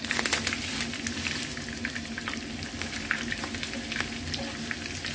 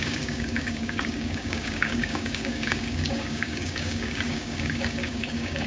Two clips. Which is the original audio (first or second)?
first